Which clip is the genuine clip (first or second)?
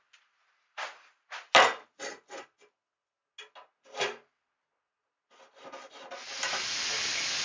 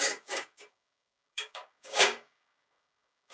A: first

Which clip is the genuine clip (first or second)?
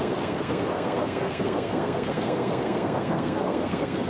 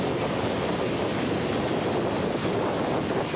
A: second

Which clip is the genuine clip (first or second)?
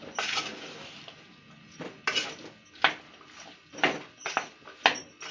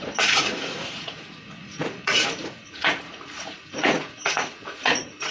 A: first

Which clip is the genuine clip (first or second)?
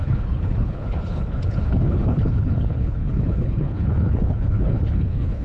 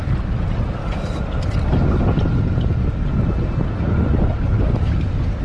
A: second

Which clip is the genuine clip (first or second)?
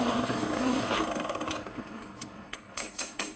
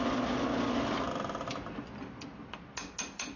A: second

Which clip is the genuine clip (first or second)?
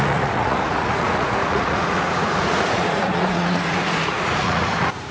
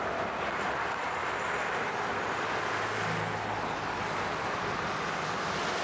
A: second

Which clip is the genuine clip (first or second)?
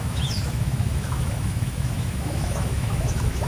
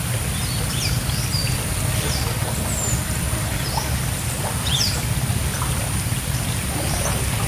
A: second